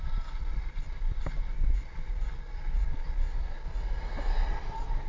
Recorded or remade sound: recorded